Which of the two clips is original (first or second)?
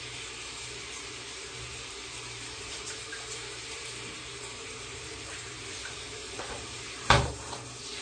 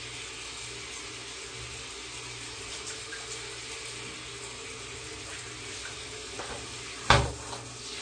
second